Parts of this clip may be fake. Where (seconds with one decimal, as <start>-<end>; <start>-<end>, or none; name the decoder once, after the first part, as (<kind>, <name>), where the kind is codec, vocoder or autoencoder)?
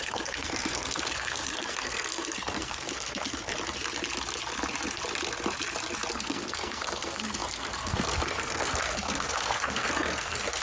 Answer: 0.0-3.5 (codec, SNAC); 6.1-10.6